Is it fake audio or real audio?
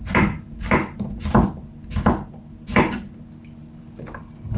real